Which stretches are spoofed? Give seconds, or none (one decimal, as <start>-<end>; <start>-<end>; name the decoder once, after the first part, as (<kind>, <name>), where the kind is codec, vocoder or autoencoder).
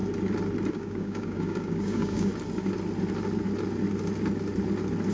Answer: 0.7-2.3 (codec, DAC)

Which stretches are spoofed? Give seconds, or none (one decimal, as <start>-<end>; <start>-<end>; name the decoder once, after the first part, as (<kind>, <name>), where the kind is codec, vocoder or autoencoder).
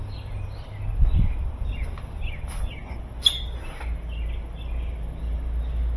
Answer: none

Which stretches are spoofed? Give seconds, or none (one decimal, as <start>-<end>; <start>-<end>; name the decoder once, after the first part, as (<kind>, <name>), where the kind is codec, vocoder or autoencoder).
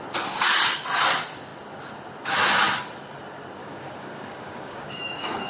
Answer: 3.6-5.5 (codec, DAC)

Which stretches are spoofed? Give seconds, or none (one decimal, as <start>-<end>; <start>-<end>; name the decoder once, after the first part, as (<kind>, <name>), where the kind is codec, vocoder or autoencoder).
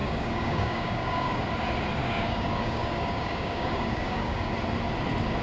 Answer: 0.0-1.4 (codec, DAC); 2.0-4.5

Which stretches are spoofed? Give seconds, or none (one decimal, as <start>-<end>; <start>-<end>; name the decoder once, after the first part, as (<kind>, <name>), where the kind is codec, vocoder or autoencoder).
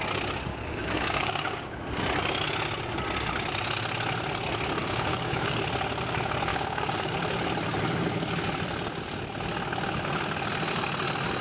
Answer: 0.5-1.8 (codec, DAC); 4.8-5.6; 6.5-7.1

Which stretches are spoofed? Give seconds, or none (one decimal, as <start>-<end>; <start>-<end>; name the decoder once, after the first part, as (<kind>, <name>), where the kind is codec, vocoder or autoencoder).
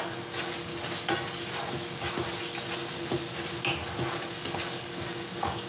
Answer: 0.0-0.7 (codec, DAC); 4.1-5.7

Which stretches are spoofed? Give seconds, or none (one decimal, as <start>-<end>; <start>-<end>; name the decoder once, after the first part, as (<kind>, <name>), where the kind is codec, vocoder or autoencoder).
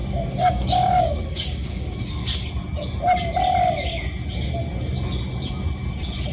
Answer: 0.0-2.2 (codec, DAC)